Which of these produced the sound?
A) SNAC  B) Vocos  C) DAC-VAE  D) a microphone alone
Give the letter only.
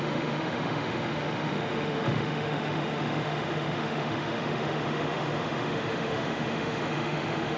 C